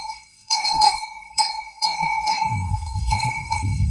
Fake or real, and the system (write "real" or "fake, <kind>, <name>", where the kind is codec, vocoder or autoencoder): fake, codec, SNAC